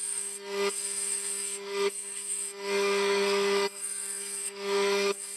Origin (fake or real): fake